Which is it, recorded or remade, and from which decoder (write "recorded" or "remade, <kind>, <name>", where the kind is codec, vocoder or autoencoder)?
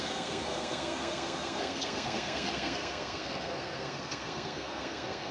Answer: remade, codec, SNAC